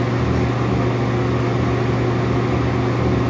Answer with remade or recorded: recorded